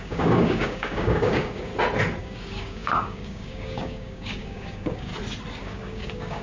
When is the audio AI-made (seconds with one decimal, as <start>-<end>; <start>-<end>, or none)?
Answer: 0.0-1.7; 2.2-5.1; 5.6-6.4